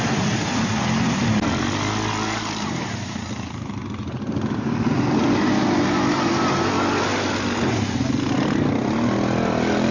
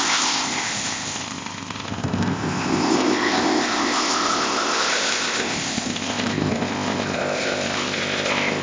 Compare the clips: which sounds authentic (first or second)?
first